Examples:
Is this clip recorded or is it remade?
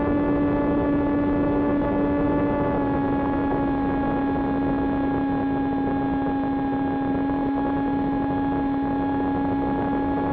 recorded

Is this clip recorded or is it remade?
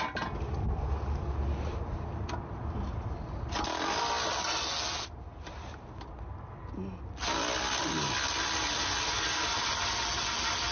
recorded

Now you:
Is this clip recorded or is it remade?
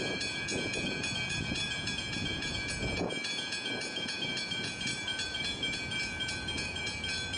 remade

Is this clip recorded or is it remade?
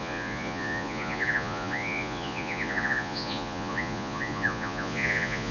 remade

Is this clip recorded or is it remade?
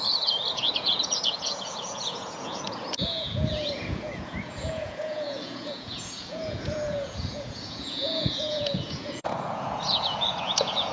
remade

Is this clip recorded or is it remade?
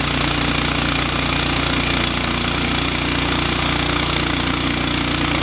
recorded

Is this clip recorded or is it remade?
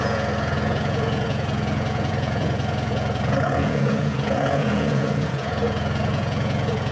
remade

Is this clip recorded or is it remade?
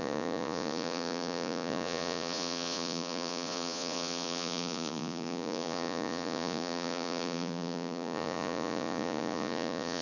remade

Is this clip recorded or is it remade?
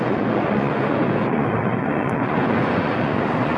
remade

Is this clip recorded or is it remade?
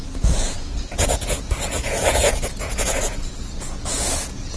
remade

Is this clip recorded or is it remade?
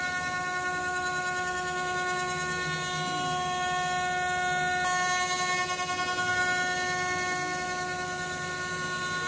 recorded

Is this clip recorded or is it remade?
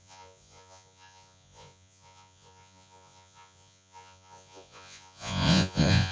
remade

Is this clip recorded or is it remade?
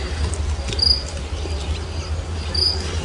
recorded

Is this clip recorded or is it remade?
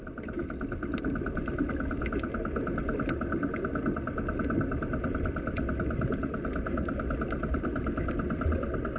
recorded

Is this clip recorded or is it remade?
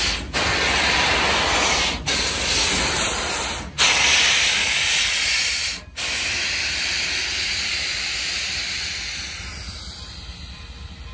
recorded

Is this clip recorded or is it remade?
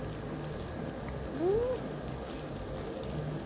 recorded